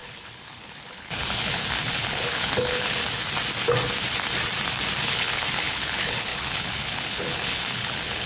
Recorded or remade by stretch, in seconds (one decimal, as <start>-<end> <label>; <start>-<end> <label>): 0.0-3.0 remade; 3.0-5.0 recorded; 5.0-8.3 remade